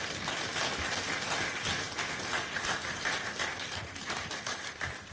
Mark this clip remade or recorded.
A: recorded